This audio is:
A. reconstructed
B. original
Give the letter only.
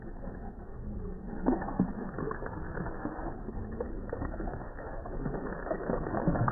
A